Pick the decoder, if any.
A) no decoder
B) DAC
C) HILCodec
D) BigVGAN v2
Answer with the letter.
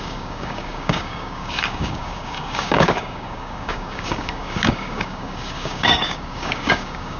B